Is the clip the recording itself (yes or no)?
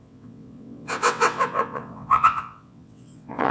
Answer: no